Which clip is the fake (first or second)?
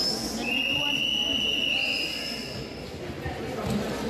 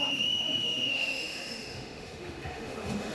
second